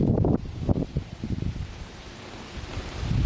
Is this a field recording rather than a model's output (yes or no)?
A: yes